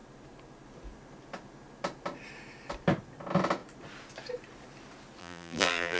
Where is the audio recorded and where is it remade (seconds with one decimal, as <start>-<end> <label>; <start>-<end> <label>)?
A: 0.0-5.2 recorded; 5.2-6.0 remade